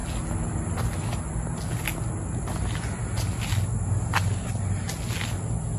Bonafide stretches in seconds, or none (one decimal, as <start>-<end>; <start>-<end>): 0.0-5.8